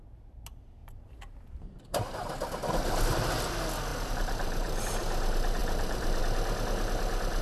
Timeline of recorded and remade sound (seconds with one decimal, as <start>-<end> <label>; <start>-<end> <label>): 0.0-0.8 recorded; 0.8-2.1 remade; 2.1-3.9 recorded; 3.9-4.8 remade; 4.8-5.6 recorded; 5.6-6.2 remade; 6.2-7.4 recorded